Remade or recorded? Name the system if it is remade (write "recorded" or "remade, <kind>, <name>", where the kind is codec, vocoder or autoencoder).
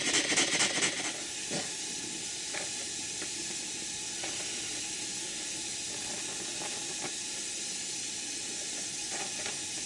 recorded